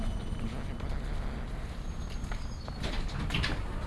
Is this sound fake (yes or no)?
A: no